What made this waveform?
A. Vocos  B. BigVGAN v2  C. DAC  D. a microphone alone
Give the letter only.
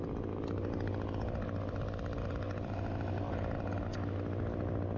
D